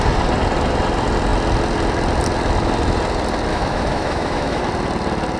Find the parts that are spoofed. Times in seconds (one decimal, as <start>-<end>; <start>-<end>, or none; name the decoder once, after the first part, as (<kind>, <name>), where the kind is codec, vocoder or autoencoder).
3.5-4.6 (autoencoder, DAC-VAE)